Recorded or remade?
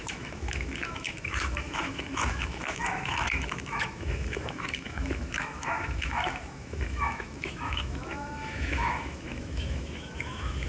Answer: remade